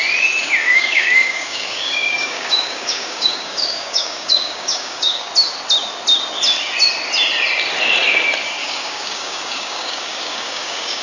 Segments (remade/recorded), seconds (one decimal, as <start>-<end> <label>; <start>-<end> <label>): 0.0-0.7 recorded; 0.7-5.3 remade; 5.3-8.6 recorded; 8.6-11.0 remade